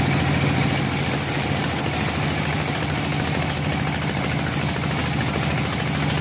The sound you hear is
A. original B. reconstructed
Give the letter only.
A